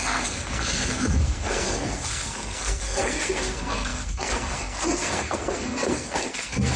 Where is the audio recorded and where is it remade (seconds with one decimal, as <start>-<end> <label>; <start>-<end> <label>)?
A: 0.0-6.8 remade